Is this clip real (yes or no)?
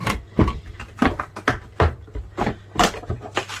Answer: yes